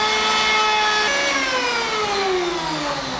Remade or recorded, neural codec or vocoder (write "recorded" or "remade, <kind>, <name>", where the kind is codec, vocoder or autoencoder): recorded